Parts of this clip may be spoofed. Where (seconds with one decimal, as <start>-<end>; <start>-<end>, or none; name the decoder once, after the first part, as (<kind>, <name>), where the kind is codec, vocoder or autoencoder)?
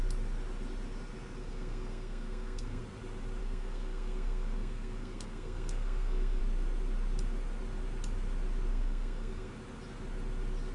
1.4-2.8 (codec, SNAC); 3.4-6.4; 8.7-9.5